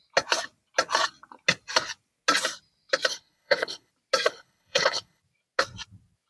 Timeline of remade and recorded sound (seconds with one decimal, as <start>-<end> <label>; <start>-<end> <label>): 0.0-3.1 recorded; 3.1-3.9 remade; 3.9-4.3 recorded; 4.3-5.2 remade; 5.2-6.3 recorded